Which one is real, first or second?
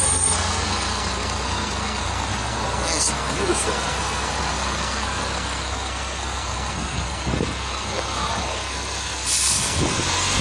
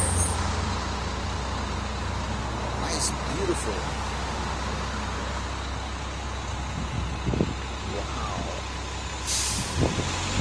second